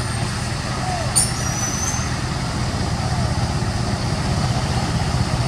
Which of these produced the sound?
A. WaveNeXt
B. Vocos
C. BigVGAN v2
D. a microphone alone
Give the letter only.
D